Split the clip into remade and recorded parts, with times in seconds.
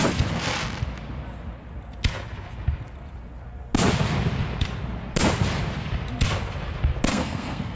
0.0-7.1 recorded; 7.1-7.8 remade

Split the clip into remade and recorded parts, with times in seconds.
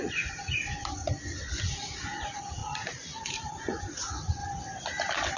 0.0-1.0 remade; 1.0-1.6 recorded; 1.6-4.4 remade; 4.4-5.4 recorded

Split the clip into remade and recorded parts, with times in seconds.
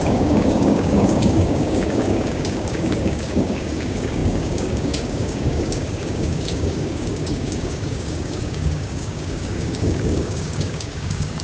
0.0-11.4 remade